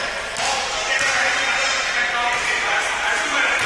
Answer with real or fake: real